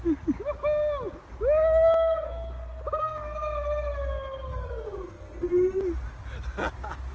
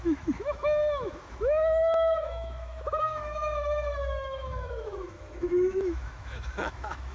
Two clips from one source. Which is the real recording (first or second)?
first